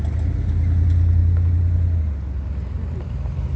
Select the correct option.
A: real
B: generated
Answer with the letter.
A